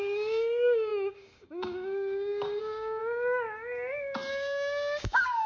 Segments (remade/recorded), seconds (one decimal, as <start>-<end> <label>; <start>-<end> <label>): 0.0-3.0 remade; 3.0-4.3 recorded; 4.3-5.5 remade